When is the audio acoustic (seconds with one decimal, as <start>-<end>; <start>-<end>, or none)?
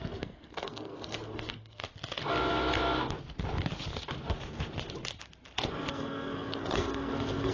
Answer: 1.8-5.9